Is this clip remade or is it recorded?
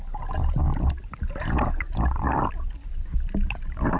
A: recorded